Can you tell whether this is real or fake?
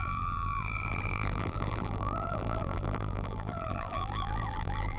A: fake